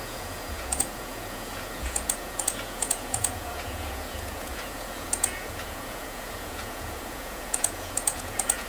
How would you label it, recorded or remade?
remade